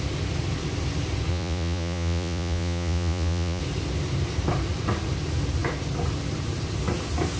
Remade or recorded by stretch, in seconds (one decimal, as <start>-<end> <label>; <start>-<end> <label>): 0.0-1.3 recorded; 1.3-3.6 remade; 3.6-7.4 recorded